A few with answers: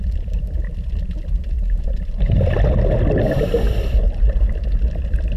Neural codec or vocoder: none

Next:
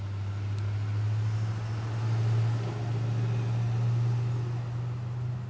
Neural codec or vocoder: none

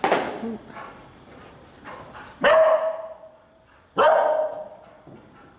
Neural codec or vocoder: none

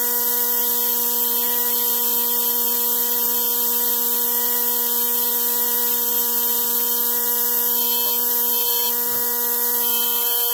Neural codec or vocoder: none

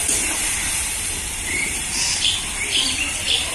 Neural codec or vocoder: vocoder, BigVGAN v2